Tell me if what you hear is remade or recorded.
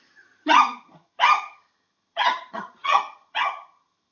remade